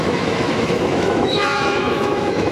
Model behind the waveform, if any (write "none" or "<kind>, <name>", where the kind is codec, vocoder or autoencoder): autoencoder, DAC-VAE